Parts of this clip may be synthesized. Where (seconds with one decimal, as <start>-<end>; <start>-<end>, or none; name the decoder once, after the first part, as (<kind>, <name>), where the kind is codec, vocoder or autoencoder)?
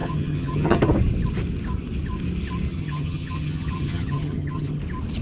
0.0-0.8 (vocoder, HiFi-GAN); 2.7-4.8